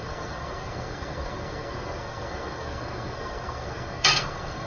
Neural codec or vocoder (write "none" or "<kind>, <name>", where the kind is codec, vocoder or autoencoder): codec, SNAC